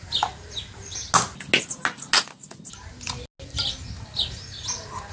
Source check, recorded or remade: recorded